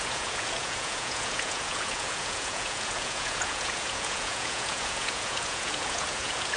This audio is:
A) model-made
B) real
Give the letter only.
A